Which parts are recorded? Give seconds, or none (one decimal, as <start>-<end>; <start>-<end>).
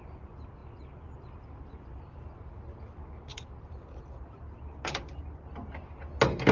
0.0-3.3; 6.1-6.5